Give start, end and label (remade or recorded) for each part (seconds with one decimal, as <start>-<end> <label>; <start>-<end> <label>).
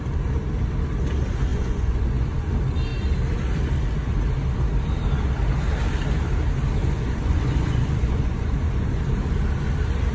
0.0-1.5 recorded; 1.5-2.5 remade; 2.5-6.8 recorded; 6.8-9.0 remade; 9.0-10.1 recorded